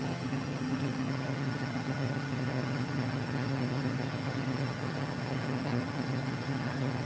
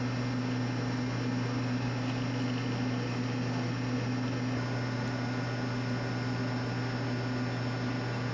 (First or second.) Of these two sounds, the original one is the second